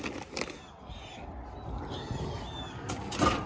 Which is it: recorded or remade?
recorded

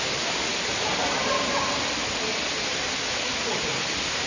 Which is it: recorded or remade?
recorded